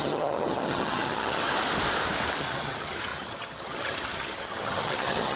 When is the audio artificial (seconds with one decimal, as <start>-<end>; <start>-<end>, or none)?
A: 0.0-1.4; 2.4-5.4